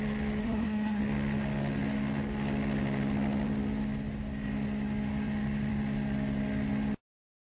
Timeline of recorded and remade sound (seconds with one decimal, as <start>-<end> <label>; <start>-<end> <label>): 0.0-0.4 recorded; 0.4-1.0 remade; 1.0-7.6 recorded